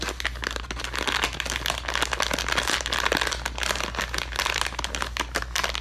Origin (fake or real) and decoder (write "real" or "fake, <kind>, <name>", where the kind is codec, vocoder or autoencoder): real